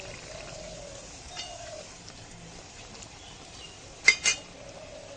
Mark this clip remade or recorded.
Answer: remade